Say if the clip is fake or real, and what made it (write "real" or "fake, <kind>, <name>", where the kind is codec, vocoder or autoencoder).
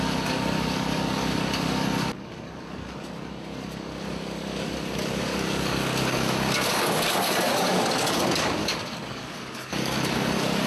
fake, codec, DAC